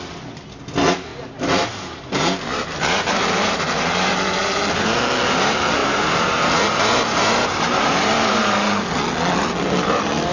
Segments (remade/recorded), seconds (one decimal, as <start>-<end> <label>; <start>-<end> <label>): 0.0-1.1 recorded; 1.1-4.6 remade; 4.6-5.8 recorded; 5.8-8.3 remade; 8.3-10.3 recorded